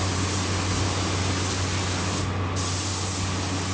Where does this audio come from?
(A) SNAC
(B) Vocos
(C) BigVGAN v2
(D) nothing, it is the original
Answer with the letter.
D